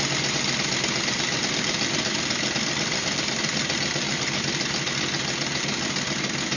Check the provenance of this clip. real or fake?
real